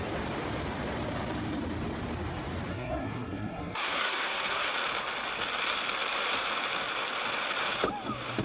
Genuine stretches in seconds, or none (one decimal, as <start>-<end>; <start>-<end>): 0.0-2.7; 4.7-8.4